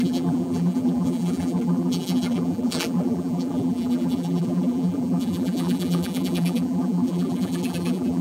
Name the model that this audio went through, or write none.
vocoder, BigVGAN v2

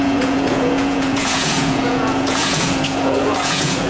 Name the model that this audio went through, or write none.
vocoder, Vocos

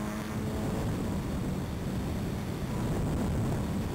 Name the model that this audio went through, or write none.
none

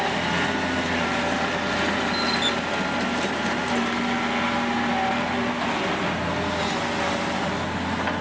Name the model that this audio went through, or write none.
none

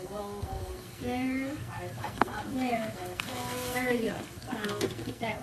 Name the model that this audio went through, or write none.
codec, SNAC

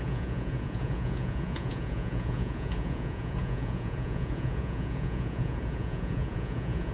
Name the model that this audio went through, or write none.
vocoder, Vocos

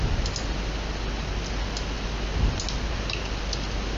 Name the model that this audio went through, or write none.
none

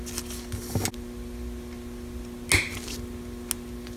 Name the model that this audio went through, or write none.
none